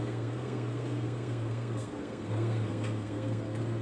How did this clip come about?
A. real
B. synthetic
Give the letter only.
B